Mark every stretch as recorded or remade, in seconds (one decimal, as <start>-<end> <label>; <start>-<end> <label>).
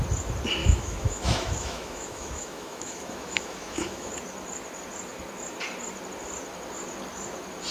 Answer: 0.0-0.6 recorded; 0.6-4.1 remade; 4.1-7.7 recorded